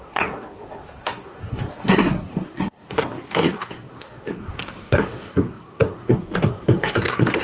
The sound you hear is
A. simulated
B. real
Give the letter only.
A